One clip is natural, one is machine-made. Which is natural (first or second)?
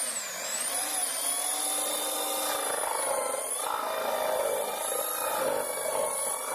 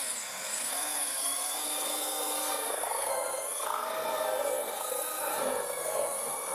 first